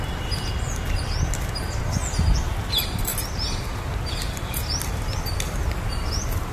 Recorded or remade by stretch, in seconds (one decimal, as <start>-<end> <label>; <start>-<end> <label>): 0.0-6.5 recorded